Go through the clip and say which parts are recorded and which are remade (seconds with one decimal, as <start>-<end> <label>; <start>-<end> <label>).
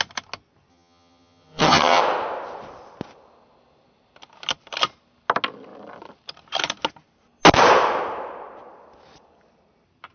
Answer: 0.0-0.7 recorded; 0.7-2.0 remade; 2.0-10.1 recorded